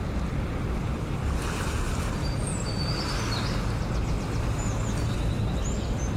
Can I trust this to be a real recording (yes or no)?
yes